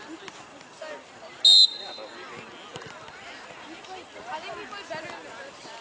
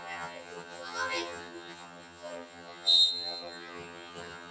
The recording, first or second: first